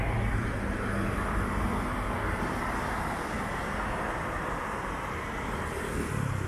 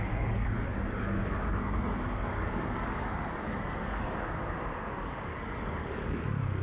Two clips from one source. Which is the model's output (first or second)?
second